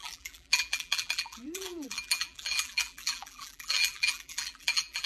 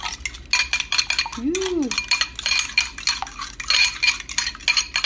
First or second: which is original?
second